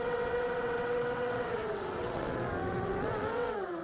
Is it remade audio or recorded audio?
remade